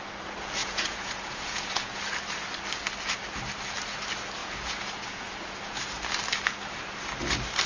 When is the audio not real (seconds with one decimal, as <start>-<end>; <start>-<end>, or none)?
0.6-2.0; 4.4-5.8